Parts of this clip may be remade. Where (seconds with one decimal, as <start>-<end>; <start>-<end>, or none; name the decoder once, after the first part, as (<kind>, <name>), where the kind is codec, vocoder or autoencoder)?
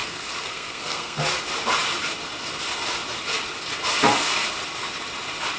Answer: 0.0-1.2 (codec, SNAC)